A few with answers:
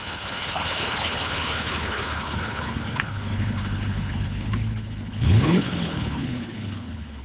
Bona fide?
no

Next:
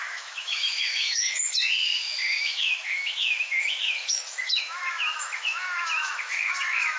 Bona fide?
no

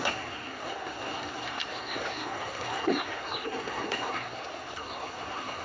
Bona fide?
no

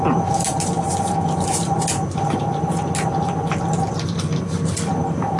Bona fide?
yes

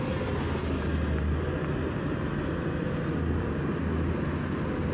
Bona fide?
yes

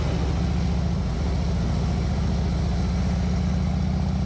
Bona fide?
yes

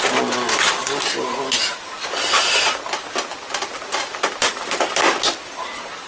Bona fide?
yes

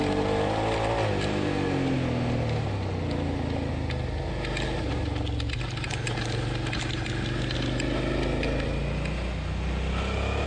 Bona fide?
yes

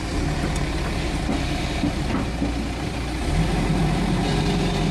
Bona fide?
yes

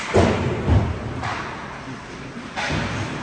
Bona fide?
yes